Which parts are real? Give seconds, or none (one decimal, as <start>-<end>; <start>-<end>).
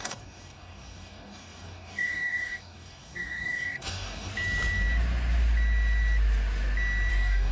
4.3-7.1